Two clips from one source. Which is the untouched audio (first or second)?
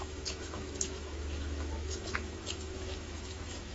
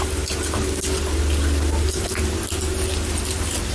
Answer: second